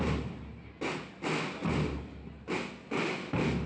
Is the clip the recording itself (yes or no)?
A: yes